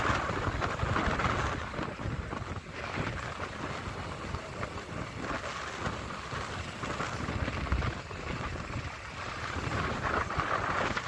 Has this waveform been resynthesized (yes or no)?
no